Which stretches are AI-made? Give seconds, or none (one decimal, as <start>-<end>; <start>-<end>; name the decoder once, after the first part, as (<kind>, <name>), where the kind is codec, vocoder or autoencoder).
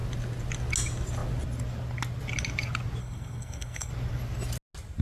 3.0-3.9 (codec, SNAC)